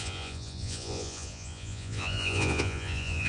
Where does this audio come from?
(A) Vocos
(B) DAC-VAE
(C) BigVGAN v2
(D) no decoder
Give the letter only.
A